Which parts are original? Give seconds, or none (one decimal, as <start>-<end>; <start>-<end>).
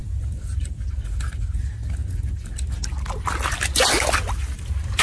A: 0.0-5.0